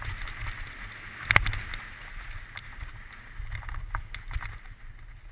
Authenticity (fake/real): real